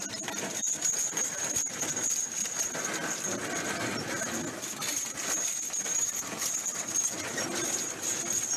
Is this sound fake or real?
real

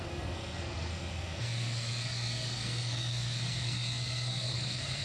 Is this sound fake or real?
fake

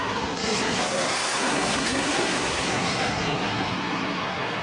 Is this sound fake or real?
fake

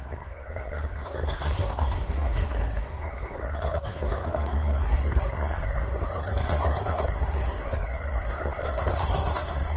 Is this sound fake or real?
fake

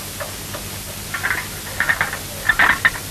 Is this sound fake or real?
real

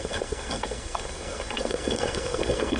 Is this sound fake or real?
fake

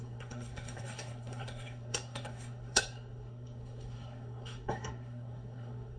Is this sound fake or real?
fake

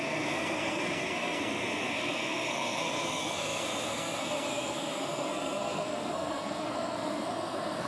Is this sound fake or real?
fake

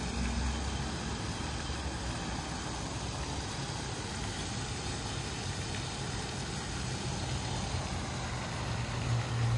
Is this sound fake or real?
real